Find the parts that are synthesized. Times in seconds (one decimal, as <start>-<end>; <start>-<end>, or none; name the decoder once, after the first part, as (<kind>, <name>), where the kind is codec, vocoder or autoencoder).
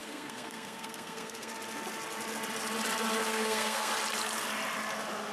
0.0-1.5 (codec, SNAC); 3.2-3.9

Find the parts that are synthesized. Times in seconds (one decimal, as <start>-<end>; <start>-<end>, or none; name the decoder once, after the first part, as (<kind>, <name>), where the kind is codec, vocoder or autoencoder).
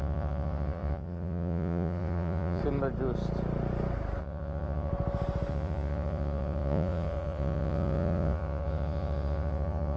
0.0-2.6 (vocoder, Vocos); 4.2-4.9; 5.5-10.0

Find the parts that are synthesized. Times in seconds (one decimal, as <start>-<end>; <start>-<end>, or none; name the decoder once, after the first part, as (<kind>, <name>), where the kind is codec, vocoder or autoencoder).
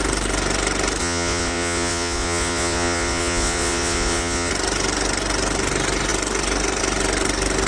1.0-4.5 (vocoder, Vocos)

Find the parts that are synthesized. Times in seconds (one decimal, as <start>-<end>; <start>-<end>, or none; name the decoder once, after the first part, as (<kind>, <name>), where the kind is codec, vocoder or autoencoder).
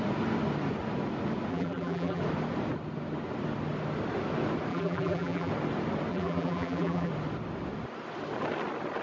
1.5-2.2 (vocoder, BigVGAN v2); 4.7-5.5; 6.1-7.1